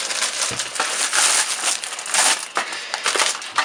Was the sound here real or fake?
real